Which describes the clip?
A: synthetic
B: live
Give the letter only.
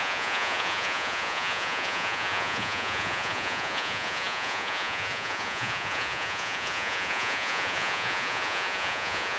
A